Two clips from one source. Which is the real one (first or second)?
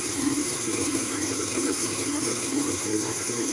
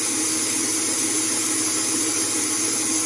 second